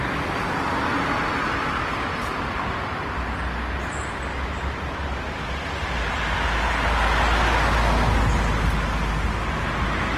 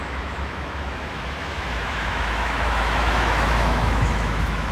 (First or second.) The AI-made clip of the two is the second